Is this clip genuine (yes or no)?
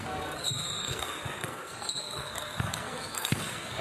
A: no